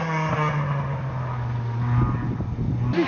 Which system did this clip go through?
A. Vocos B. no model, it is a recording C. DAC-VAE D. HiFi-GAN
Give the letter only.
B